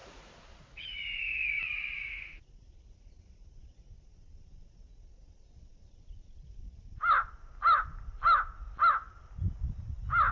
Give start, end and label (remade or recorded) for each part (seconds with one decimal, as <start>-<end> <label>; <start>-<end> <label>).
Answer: 0.0-2.4 remade; 2.4-10.3 recorded